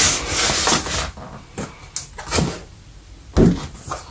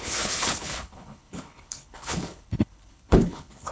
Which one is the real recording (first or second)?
first